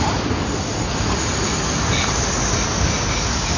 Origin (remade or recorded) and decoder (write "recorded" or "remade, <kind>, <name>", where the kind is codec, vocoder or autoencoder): recorded